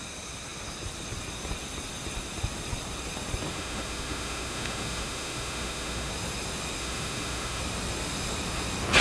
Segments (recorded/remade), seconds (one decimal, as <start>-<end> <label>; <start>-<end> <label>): 0.0-3.5 recorded; 3.5-6.1 remade; 6.1-6.8 recorded; 6.8-7.6 remade; 7.6-9.0 recorded